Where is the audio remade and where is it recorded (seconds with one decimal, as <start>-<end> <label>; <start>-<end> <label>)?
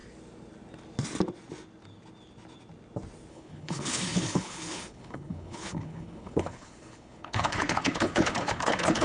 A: 0.0-3.3 recorded; 3.3-9.0 remade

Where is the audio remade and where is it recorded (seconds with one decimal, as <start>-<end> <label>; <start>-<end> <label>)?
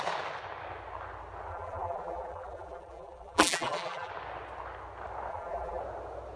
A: 0.0-1.5 recorded; 1.5-4.1 remade; 4.1-5.3 recorded; 5.3-5.8 remade; 5.8-6.4 recorded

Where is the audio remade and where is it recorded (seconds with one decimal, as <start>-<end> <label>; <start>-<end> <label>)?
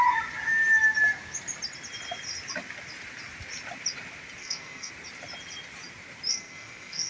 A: 0.0-4.4 recorded; 4.4-4.9 remade; 4.9-6.3 recorded; 6.3-7.1 remade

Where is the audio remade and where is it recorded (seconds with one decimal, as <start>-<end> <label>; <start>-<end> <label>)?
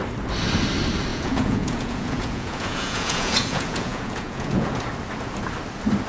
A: 0.0-1.1 recorded; 1.1-4.8 remade; 4.8-6.1 recorded